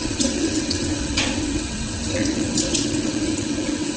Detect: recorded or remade remade